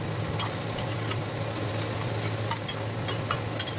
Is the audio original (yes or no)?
yes